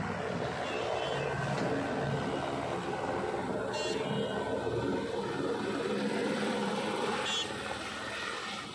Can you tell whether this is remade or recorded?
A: recorded